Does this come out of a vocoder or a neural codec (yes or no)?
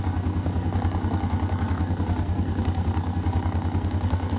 yes